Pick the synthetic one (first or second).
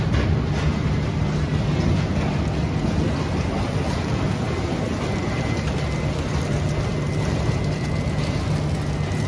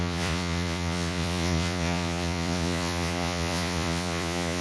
second